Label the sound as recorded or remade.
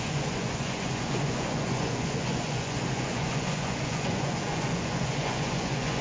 remade